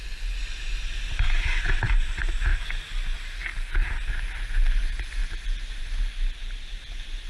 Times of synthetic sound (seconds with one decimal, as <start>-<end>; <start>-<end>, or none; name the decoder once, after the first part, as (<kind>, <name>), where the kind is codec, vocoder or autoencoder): none